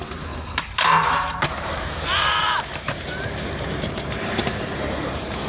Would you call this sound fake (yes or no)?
yes